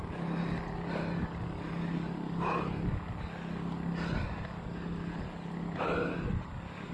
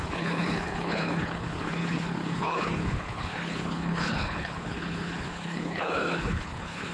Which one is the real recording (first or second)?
first